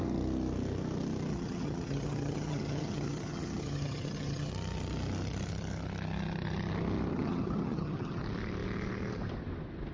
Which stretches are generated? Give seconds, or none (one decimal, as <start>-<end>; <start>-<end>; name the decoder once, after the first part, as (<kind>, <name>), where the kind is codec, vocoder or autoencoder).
1.3-4.5 (vocoder, HiFi-GAN); 7.1-8.2